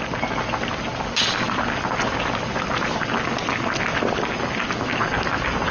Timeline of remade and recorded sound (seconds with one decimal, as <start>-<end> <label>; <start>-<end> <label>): 0.0-5.7 recorded

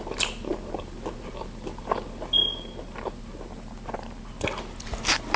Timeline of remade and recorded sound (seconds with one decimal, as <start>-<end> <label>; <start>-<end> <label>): 0.0-5.4 recorded